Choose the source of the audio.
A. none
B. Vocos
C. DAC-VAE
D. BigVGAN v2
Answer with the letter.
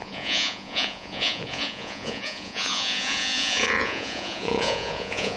B